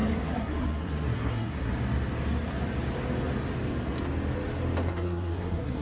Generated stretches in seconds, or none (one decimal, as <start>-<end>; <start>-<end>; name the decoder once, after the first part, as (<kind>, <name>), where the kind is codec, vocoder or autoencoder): 0.0-1.7 (codec, SNAC); 4.9-5.8